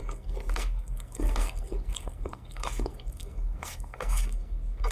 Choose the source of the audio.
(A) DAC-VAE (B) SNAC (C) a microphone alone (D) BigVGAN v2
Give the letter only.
B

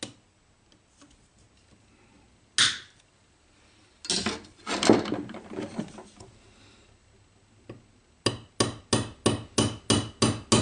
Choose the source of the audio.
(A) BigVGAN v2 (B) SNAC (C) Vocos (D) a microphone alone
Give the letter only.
D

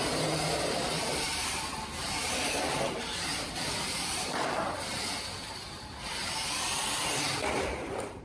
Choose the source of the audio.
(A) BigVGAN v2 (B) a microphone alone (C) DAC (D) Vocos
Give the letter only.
A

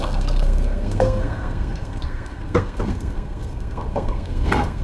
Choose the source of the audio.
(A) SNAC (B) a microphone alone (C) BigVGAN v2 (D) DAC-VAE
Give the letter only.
A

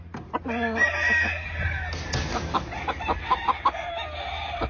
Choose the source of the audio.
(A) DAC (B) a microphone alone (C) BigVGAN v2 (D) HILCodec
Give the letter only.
B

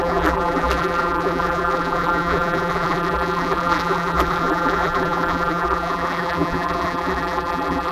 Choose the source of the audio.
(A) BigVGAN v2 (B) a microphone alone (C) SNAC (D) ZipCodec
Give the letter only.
A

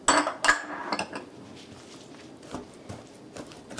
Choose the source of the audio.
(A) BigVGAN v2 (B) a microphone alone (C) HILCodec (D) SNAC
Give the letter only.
B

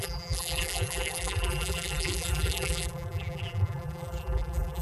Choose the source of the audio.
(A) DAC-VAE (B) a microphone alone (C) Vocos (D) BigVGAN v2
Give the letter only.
D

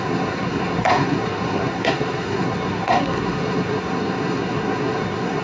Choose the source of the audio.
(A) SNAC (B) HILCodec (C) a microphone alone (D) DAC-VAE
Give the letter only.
A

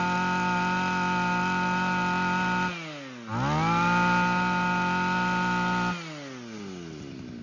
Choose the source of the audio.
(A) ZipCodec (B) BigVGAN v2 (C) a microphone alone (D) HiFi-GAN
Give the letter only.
C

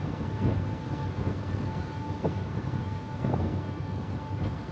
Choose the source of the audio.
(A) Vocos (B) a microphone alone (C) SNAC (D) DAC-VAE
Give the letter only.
C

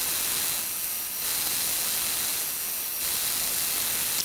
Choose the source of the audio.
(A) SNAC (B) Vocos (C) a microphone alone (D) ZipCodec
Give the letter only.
C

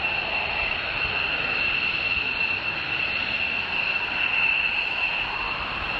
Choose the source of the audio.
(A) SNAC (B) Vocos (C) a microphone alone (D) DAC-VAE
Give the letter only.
C